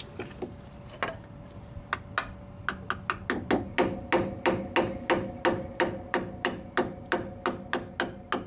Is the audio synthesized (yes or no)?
no